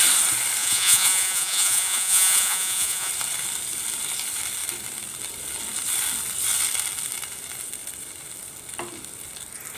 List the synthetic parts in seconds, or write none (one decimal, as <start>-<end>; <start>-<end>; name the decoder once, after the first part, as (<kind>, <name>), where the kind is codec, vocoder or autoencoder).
0.6-3.1 (vocoder, Vocos)